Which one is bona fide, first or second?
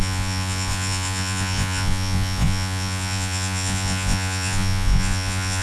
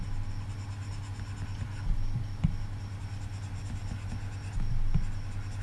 second